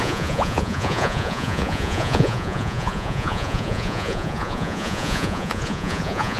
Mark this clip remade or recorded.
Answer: remade